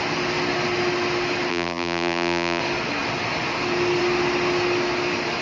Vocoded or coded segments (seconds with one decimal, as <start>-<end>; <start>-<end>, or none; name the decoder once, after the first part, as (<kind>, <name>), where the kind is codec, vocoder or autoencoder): 1.5-2.6 (vocoder, BigVGAN v2)